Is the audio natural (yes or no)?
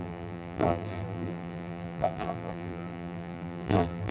no